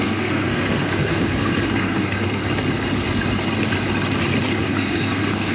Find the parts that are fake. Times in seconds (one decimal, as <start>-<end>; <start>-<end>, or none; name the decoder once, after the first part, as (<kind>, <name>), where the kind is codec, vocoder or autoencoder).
0.0-2.4 (codec, SNAC); 4.6-5.5